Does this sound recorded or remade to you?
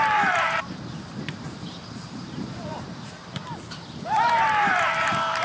remade